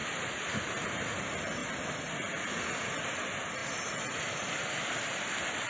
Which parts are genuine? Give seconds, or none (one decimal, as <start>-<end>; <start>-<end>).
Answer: 1.1-5.7